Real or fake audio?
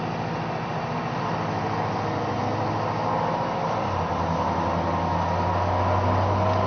real